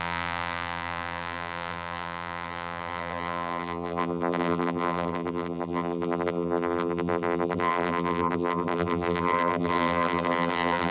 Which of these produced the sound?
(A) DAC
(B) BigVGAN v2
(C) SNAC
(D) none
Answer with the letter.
B